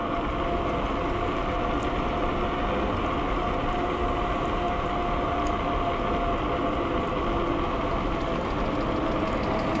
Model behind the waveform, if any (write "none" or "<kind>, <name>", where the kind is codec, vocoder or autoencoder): none